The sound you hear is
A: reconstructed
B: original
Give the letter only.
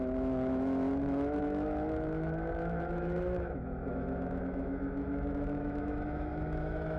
A